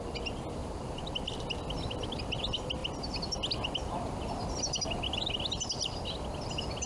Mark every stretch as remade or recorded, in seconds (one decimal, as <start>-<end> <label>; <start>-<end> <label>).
0.0-0.6 recorded; 0.6-1.1 remade; 1.1-6.9 recorded